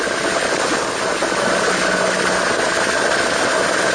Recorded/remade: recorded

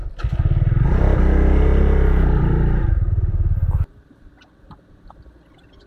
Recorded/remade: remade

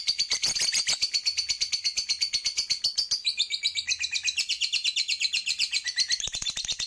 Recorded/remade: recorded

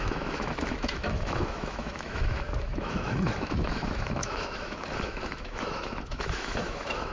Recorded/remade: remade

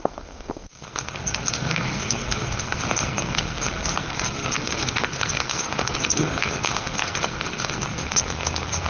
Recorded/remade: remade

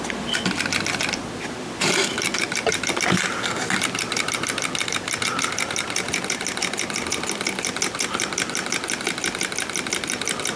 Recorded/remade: recorded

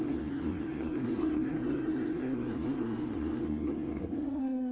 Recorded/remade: remade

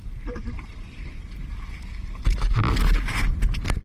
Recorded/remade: recorded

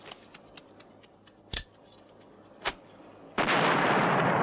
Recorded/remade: recorded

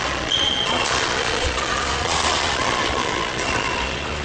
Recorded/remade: remade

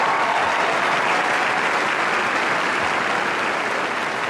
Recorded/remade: recorded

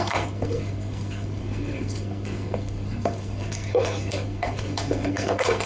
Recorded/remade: remade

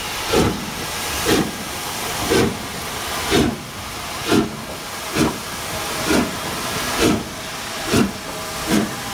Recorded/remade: recorded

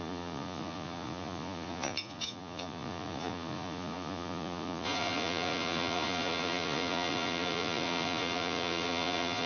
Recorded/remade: remade